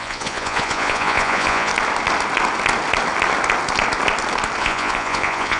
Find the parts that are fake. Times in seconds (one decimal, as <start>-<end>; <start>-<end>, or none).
0.0-1.7; 4.6-5.6